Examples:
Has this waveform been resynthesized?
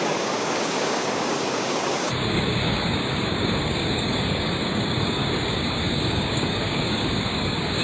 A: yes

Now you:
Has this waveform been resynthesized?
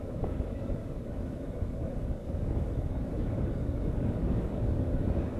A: yes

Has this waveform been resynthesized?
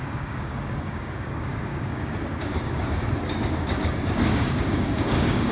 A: yes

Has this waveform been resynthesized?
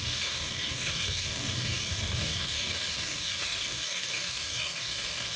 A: yes